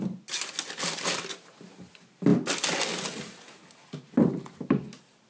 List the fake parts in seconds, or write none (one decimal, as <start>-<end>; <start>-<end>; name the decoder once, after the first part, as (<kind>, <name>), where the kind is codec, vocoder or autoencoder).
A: none